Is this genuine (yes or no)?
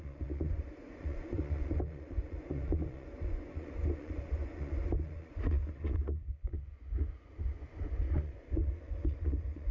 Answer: no